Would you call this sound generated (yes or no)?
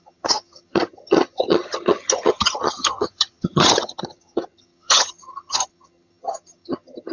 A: yes